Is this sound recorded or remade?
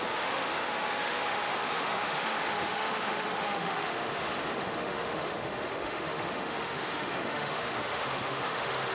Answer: remade